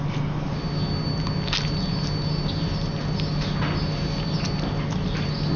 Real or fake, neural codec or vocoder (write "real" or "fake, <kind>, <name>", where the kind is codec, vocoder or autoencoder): real